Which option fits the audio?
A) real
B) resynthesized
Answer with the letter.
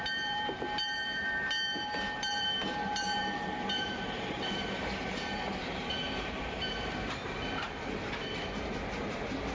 B